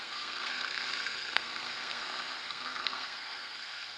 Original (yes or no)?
no